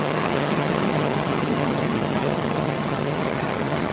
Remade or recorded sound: remade